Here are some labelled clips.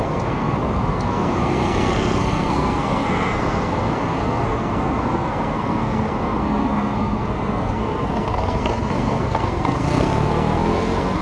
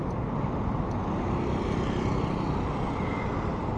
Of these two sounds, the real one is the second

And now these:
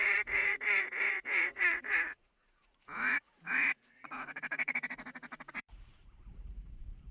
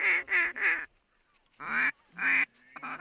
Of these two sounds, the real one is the second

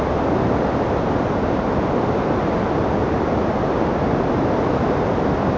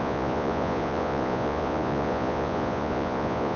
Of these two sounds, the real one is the first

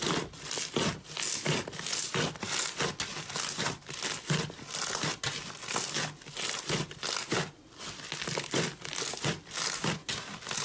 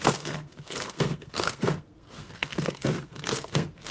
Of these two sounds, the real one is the first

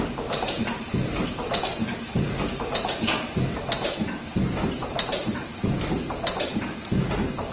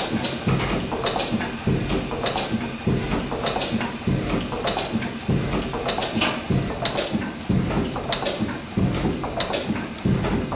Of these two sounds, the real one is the second